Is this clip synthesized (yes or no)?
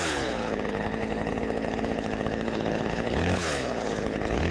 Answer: yes